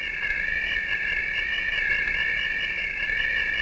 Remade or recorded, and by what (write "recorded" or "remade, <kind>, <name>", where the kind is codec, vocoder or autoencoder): recorded